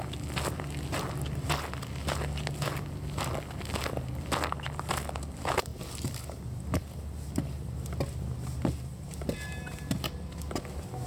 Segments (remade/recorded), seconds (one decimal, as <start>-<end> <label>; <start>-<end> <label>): 0.0-11.1 recorded